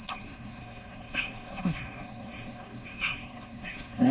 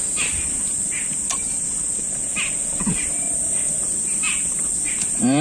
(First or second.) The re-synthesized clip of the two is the first